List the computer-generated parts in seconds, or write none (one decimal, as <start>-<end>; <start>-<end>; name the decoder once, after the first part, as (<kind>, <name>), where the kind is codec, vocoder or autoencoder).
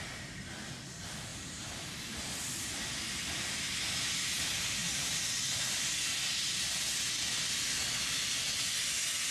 1.3-1.9 (vocoder, BigVGAN v2); 4.8-5.4